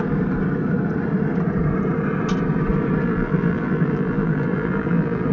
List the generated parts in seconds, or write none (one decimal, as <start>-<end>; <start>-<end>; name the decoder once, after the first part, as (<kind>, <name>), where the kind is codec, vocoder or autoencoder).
3.0-5.3 (vocoder, BigVGAN v2)